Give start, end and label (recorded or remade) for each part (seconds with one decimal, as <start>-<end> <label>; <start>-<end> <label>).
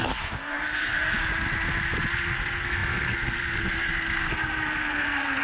0.0-1.2 remade; 1.2-2.1 recorded; 2.1-5.4 remade